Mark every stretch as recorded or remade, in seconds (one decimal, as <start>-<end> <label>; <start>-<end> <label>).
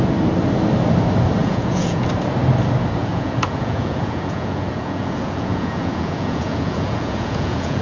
0.0-1.4 recorded; 1.4-2.1 remade; 2.1-3.0 recorded; 3.0-7.8 remade